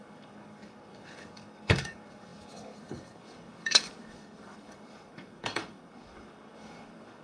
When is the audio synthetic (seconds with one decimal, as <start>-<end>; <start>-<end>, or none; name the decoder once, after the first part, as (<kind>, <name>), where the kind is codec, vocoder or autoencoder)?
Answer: 0.0-7.2 (codec, DAC)